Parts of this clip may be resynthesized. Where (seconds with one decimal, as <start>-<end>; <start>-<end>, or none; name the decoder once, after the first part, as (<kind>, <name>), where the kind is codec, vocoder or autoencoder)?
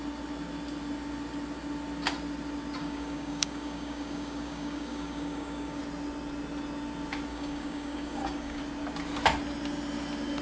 2.8-5.8 (codec, DAC); 7.3-8.6